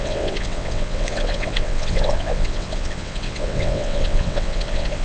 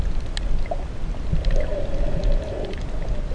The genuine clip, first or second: second